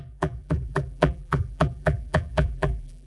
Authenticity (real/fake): fake